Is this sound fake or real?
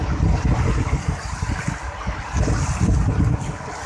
real